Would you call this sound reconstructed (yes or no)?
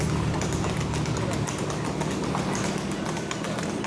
no